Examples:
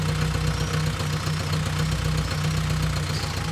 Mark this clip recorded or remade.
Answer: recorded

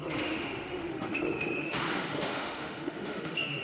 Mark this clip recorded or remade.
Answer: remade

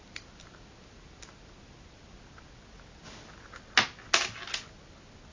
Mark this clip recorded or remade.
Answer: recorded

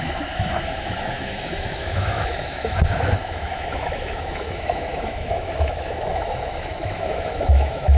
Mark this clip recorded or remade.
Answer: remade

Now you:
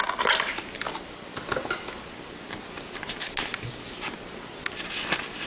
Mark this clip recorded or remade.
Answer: recorded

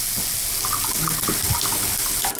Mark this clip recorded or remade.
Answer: recorded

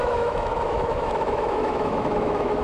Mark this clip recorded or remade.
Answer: remade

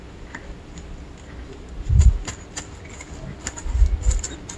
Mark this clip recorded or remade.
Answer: recorded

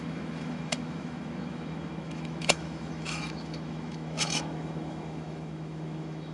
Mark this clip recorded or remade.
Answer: remade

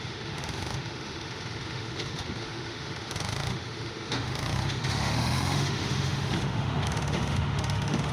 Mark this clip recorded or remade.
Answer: remade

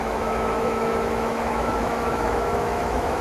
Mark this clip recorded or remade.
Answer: remade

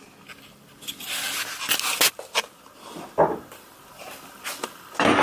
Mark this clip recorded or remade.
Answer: recorded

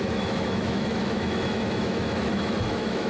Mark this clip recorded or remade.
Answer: remade